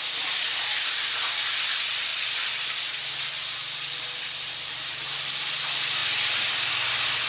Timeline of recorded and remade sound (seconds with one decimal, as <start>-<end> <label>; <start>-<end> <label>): 0.0-7.3 recorded